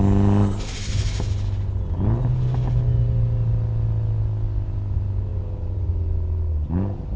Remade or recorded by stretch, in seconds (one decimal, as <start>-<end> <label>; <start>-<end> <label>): 0.0-5.3 recorded; 5.3-5.9 remade; 5.9-7.2 recorded